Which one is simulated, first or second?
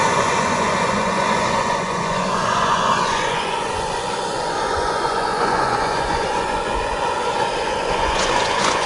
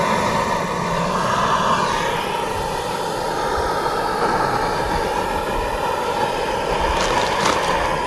first